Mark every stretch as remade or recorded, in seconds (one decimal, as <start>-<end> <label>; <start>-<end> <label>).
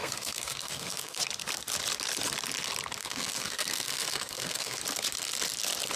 0.0-1.2 remade; 1.2-3.0 recorded; 3.0-4.8 remade; 4.8-6.0 recorded